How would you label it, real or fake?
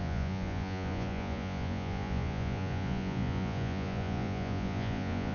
fake